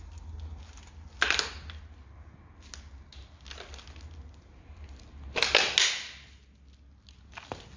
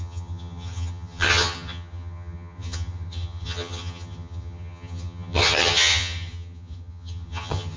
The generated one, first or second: second